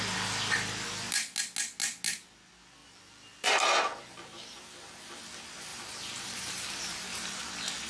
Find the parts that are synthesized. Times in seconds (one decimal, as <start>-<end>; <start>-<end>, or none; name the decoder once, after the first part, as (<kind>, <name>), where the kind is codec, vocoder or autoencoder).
2.8-5.2 (vocoder, BigVGAN v2); 5.7-7.5